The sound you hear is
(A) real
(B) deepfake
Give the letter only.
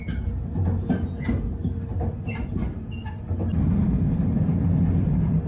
A